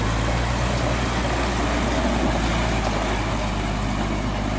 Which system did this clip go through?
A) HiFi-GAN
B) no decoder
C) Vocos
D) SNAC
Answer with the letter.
B